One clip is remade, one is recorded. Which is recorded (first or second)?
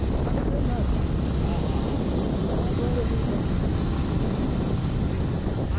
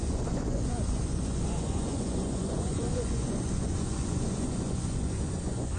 first